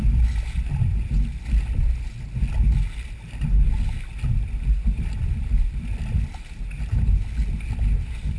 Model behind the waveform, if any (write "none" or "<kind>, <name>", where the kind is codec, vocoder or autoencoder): none